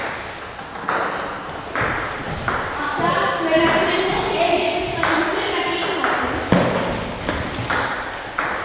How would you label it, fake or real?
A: real